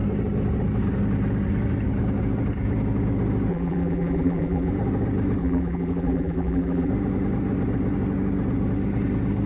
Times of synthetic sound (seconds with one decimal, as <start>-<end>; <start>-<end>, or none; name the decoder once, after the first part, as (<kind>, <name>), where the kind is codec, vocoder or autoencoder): 3.5-4.7 (vocoder, BigVGAN v2); 5.4-6.9